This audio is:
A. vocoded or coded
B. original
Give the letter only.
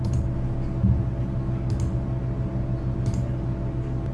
B